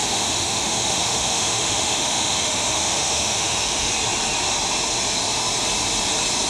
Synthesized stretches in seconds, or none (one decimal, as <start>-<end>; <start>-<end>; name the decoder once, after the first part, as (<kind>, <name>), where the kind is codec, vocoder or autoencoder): 0.0-3.9 (autoencoder, DAC-VAE)